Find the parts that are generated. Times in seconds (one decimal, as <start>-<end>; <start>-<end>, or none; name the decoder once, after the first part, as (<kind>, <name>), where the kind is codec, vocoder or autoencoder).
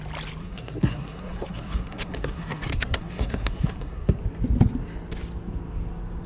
0.4-4.2 (codec, SNAC)